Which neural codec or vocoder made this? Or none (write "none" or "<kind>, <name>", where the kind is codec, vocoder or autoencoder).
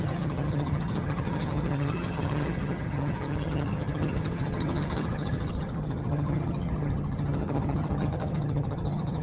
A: vocoder, HiFi-GAN